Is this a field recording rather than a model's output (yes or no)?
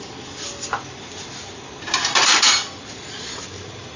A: yes